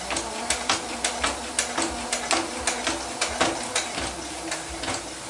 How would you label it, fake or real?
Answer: real